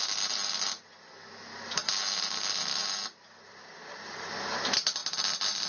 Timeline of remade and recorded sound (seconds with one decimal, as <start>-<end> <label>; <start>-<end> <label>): 0.0-5.7 recorded